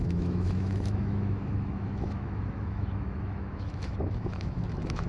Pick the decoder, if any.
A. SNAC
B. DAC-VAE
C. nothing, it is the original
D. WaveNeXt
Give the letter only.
B